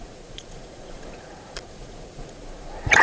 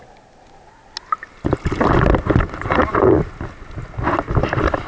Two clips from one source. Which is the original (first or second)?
second